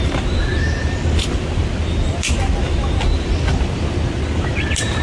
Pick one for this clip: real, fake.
real